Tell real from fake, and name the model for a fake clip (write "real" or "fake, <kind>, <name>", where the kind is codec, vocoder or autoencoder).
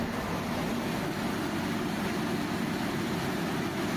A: real